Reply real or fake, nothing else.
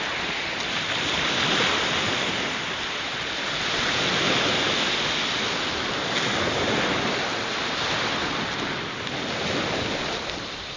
real